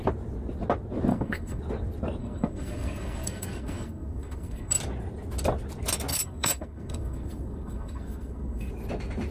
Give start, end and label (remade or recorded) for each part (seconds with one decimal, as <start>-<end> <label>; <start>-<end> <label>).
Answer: 0.0-1.1 recorded; 1.1-1.6 remade; 1.6-2.2 recorded; 2.2-4.8 remade; 4.8-6.1 recorded; 6.1-8.7 remade; 8.7-9.3 recorded